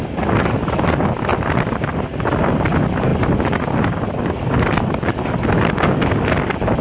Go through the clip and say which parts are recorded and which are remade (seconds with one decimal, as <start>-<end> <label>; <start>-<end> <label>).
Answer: 0.0-6.8 recorded